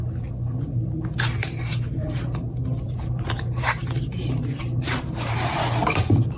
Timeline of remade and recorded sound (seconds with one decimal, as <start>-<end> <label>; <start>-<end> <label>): 0.0-1.7 recorded; 1.7-5.5 remade; 5.5-6.4 recorded